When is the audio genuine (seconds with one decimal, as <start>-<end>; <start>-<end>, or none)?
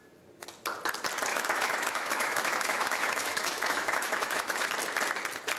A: 0.0-1.3; 4.7-5.6